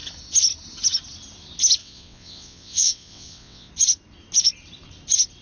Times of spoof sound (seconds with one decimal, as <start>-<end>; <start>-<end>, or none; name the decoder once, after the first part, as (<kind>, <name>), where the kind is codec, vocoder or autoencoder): 1.8-3.7 (vocoder, WaveNeXt)